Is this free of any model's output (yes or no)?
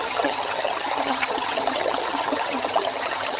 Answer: no